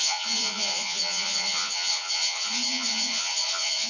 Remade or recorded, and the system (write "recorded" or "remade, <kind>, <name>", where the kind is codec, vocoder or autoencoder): remade, vocoder, Vocos